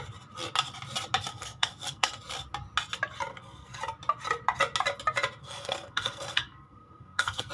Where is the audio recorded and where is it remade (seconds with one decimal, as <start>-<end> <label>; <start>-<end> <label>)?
0.0-1.3 recorded; 1.3-2.2 remade; 2.2-3.3 recorded; 3.3-3.8 remade; 3.8-5.4 recorded; 5.4-7.5 remade